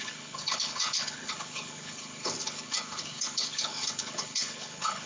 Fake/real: fake